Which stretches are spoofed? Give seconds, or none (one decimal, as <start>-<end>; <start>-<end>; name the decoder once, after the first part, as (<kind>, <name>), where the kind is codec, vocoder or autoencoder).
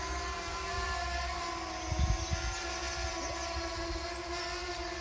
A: none